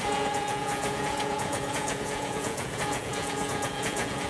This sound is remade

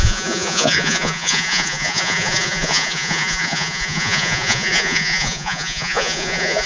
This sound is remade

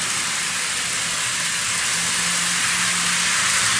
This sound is recorded